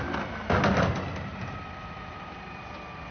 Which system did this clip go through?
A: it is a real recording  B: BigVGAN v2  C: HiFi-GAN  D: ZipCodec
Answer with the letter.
A